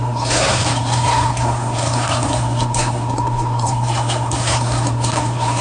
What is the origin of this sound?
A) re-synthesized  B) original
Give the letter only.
A